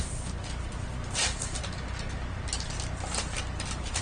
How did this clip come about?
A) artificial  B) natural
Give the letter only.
B